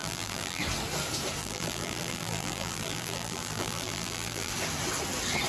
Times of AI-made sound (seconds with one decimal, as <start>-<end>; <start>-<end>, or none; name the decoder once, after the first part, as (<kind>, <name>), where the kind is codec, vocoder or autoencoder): 0.0-0.6 (vocoder, BigVGAN v2); 1.4-4.5